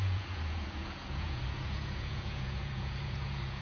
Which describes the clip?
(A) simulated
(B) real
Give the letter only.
A